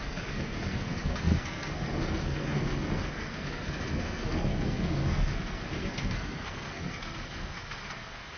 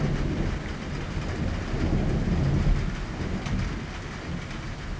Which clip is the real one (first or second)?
second